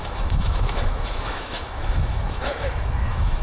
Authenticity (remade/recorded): remade